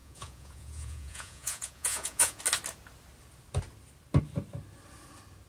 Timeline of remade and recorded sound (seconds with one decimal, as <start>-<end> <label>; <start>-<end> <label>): 0.0-2.4 remade; 2.4-5.5 recorded